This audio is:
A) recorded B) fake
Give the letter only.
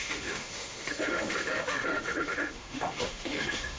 B